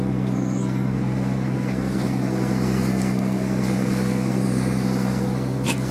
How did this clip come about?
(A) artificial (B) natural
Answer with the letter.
A